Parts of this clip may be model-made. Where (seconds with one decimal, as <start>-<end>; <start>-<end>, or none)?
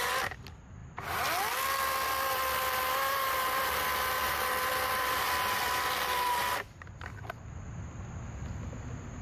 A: none